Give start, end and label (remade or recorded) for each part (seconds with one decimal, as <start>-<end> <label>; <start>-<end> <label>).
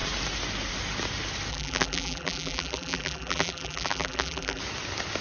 0.0-1.5 recorded; 1.5-4.6 remade; 4.6-5.2 recorded